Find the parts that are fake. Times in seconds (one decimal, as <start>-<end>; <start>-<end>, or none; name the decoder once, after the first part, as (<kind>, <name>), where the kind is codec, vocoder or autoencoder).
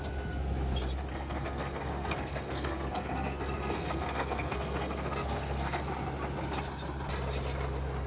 1.1-5.8 (codec, SNAC)